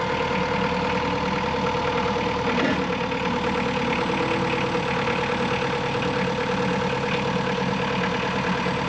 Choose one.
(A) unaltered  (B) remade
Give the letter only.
A